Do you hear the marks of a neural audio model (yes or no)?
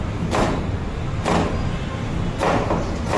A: no